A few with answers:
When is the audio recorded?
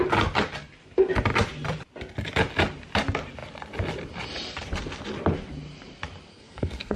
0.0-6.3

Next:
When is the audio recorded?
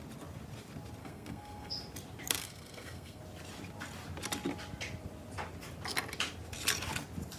0.0-1.0; 1.7-2.4; 3.2-7.4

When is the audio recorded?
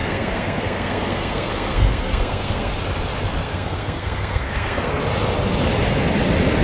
2.7-3.4; 5.0-6.6